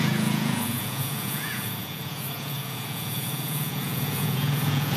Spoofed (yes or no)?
yes